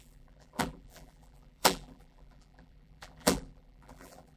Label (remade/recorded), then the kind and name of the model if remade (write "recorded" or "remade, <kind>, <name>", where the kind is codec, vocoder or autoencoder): remade, vocoder, BigVGAN v2